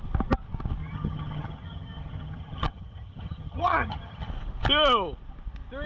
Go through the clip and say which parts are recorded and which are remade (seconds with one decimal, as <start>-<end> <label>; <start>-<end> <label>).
0.0-0.8 recorded; 0.8-4.3 remade; 4.3-5.9 recorded